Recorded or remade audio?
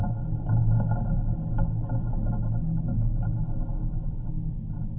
recorded